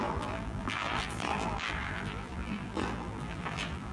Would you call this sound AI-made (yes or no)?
yes